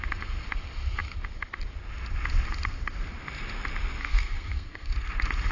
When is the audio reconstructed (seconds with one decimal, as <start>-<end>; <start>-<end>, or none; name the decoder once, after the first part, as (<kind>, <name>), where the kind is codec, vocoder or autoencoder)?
4.0-5.1 (codec, SNAC)